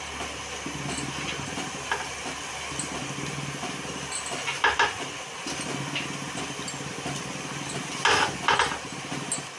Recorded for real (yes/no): yes